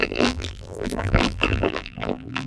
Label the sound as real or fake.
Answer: fake